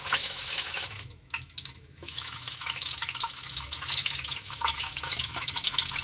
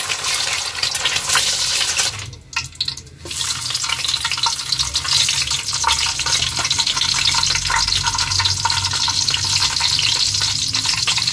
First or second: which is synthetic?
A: first